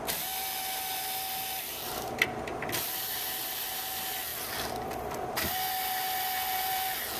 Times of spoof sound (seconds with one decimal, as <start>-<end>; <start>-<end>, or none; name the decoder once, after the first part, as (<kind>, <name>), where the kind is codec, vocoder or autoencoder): none